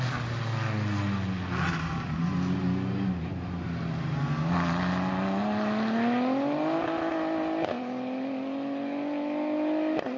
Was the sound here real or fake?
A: real